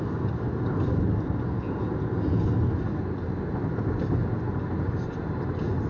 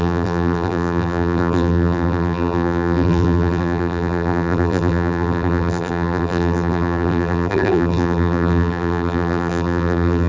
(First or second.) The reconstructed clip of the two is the second